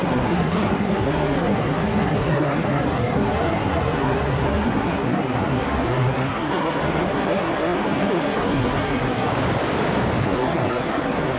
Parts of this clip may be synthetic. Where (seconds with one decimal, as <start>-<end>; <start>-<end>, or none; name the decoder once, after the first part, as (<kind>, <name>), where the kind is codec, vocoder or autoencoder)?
0.0-9.3 (codec, SNAC); 10.2-11.4